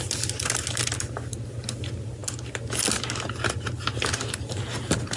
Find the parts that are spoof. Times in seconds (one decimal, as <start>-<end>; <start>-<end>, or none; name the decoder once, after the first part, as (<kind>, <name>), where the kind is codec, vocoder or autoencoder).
none